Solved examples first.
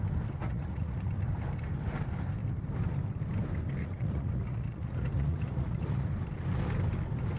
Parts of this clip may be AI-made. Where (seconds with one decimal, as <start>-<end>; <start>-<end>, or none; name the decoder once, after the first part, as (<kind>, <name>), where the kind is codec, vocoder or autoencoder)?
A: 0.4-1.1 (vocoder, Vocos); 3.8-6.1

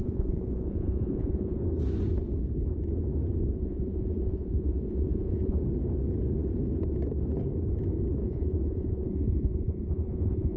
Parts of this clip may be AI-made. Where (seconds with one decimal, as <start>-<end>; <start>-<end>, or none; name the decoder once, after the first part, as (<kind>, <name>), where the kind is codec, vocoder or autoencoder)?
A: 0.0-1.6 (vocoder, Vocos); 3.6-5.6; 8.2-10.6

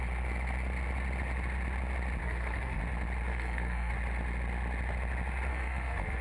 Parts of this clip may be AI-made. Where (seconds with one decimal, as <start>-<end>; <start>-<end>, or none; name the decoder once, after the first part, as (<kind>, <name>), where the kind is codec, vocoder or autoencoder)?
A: 2.2-2.8 (codec, SNAC); 3.3-3.9; 5.5-6.2